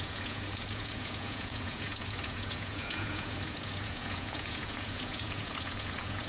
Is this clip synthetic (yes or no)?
yes